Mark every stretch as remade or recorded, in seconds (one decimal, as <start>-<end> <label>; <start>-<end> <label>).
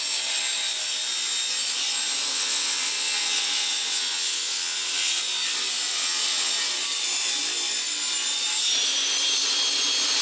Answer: 0.0-2.3 recorded; 2.3-5.2 remade; 5.2-5.9 recorded; 5.9-6.5 remade; 6.5-10.2 recorded